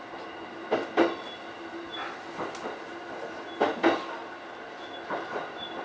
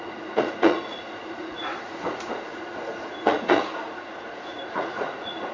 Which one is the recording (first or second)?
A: first